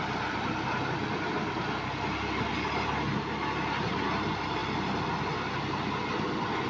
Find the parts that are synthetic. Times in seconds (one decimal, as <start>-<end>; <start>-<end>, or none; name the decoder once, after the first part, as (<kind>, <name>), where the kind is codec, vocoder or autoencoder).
none